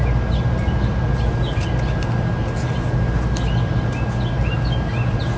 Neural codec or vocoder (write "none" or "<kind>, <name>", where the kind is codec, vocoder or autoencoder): none